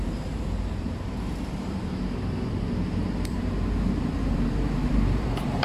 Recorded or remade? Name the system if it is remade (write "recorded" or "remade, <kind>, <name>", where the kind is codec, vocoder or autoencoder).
remade, vocoder, BigVGAN v2